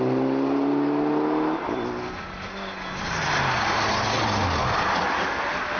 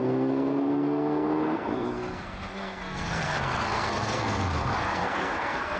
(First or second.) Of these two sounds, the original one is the first